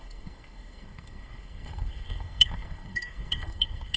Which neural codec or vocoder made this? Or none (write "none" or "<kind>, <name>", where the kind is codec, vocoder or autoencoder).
codec, SNAC